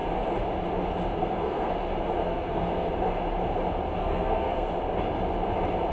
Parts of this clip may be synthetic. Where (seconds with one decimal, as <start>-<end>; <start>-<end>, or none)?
1.2-1.7; 2.2-2.9; 4.0-4.7